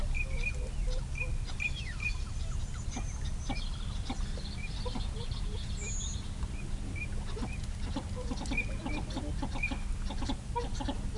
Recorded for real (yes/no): yes